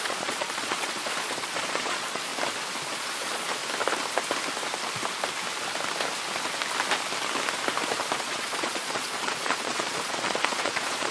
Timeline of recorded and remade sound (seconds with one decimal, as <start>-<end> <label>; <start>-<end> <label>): 0.0-2.3 remade; 2.3-2.9 recorded; 2.9-3.6 remade; 3.6-8.2 recorded; 8.2-11.1 remade